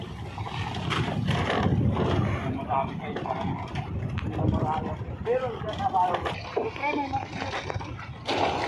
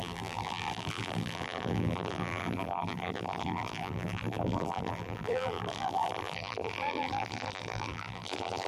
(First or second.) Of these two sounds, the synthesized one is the second